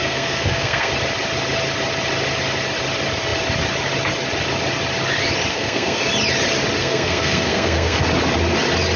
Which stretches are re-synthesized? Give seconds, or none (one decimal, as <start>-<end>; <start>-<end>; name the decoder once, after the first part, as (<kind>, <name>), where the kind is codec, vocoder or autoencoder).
0.0-0.9 (codec, SNAC); 5.5-6.1; 6.8-8.0